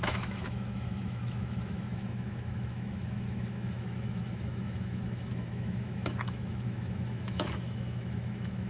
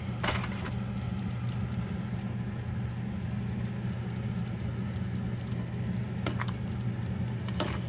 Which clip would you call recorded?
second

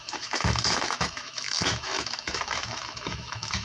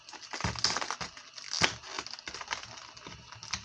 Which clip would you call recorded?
second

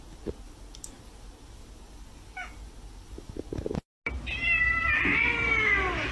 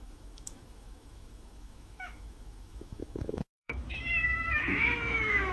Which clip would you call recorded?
first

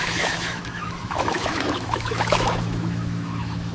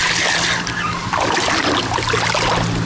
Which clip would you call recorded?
second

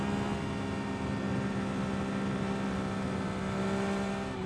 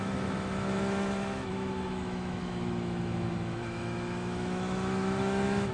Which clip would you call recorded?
first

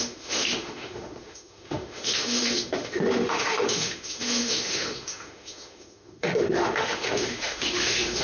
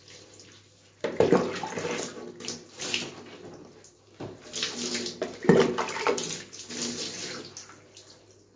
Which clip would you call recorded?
second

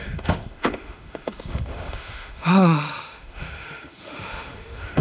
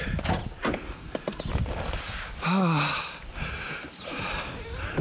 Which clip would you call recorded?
second